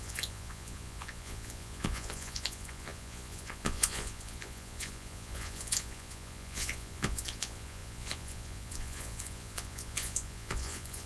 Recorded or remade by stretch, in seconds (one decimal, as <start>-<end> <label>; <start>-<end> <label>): 0.0-11.1 remade